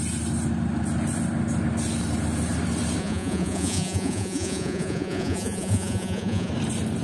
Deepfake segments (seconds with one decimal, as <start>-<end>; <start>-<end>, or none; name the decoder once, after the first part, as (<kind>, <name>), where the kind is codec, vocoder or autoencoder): 3.0-6.5 (vocoder, Vocos)